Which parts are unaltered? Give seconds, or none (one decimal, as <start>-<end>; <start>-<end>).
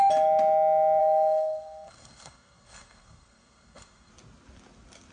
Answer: 0.0-1.0; 4.1-5.1